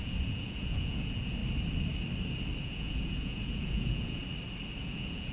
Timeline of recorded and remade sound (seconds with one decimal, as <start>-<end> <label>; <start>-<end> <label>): 0.0-1.4 remade; 1.4-2.6 recorded; 2.6-4.2 remade; 4.2-4.8 recorded; 4.8-5.3 remade